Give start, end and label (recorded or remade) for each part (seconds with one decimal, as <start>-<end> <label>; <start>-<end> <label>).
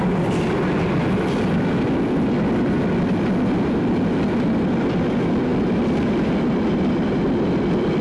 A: 0.0-8.0 recorded